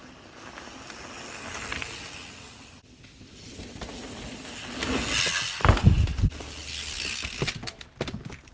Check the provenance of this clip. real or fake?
real